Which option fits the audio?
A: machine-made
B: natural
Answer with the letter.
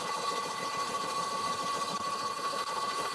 A